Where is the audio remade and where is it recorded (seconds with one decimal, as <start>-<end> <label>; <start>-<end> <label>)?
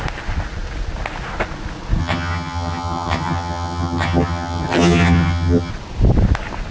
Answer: 0.0-2.0 recorded; 2.0-5.7 remade; 5.7-6.7 recorded